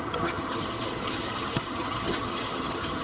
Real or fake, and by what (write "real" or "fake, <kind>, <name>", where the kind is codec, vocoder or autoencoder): fake, vocoder, HiFi-GAN